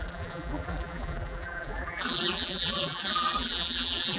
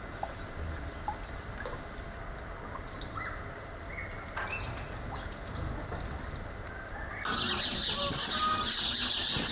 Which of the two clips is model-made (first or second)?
first